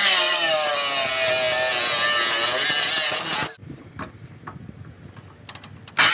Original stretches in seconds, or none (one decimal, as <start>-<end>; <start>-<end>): 0.7-6.1